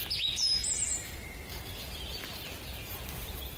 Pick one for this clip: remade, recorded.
recorded